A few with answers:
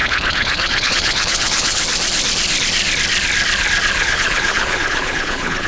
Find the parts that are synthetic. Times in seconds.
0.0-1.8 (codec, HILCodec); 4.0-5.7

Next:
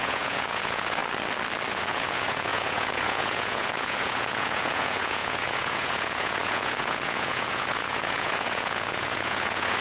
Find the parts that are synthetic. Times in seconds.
0.0-1.0 (vocoder, Vocos); 1.7-9.8

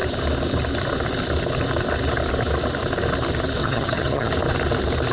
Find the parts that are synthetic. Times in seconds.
3.6-4.3 (vocoder, HiFi-GAN)